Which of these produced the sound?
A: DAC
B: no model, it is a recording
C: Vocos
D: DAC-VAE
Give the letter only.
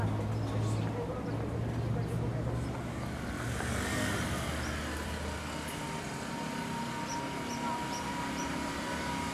B